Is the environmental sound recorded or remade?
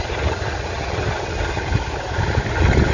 recorded